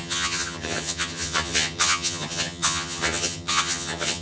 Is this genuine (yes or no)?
no